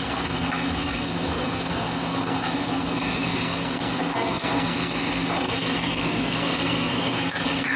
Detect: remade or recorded remade